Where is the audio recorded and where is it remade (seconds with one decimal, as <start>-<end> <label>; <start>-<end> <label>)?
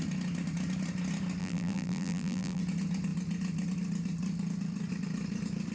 0.0-1.4 recorded; 1.4-2.6 remade; 2.6-5.7 recorded